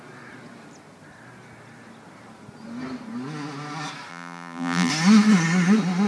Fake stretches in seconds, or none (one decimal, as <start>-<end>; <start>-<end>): 4.1-4.9